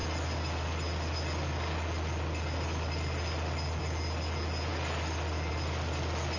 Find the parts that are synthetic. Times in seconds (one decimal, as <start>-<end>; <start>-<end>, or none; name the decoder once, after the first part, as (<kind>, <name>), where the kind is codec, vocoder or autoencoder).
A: none